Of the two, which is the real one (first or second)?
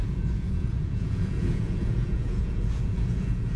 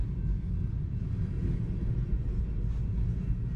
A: second